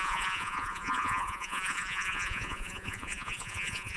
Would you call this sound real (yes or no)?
no